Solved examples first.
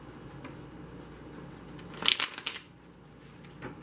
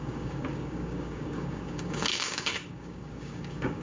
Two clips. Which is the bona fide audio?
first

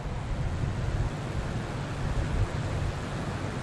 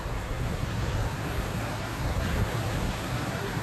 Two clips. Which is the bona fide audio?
first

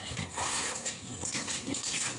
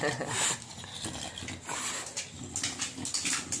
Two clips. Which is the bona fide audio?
second